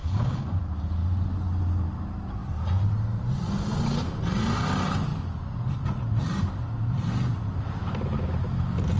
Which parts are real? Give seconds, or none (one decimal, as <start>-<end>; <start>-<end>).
0.6-9.0